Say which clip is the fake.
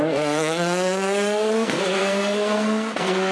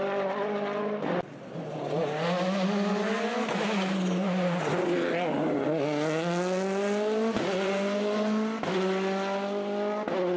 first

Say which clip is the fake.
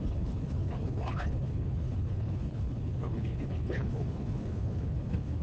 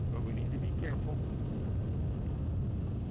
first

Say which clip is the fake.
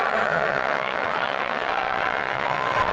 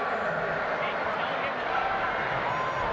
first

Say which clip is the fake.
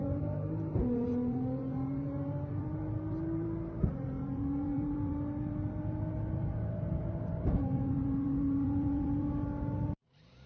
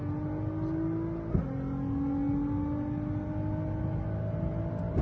first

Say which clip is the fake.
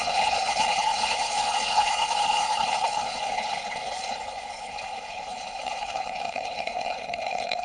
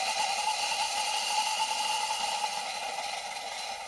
first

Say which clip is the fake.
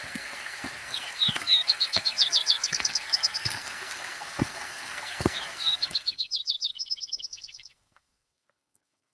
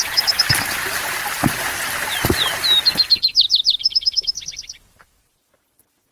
first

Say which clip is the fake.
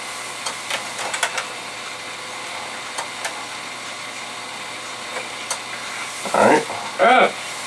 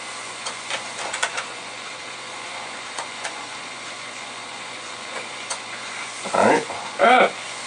second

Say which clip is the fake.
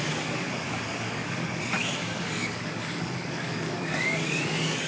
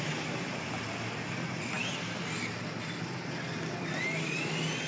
first